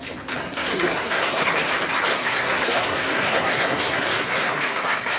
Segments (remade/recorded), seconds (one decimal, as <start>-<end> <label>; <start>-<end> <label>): 0.0-0.4 recorded; 0.4-1.5 remade; 1.5-2.1 recorded; 2.1-5.2 remade